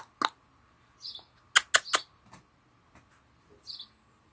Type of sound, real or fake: real